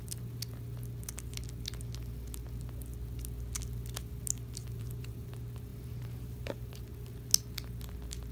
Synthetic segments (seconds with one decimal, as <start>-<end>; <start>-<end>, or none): 4.6-5.3; 5.7-6.8

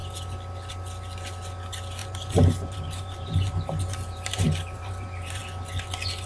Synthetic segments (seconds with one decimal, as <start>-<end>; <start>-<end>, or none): 2.0-5.4

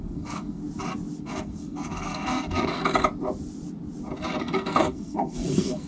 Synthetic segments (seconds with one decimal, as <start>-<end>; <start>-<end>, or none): 0.0-0.6; 1.2-2.8; 4.4-5.9

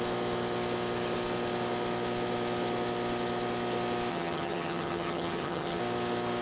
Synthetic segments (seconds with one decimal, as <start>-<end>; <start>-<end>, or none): 4.1-5.8

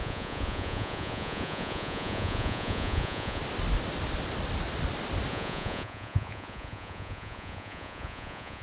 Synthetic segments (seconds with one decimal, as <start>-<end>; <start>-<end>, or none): 0.0-3.4; 5.3-8.6